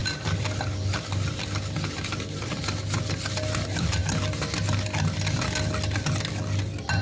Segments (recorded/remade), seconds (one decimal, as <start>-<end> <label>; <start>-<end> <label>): 0.0-7.0 recorded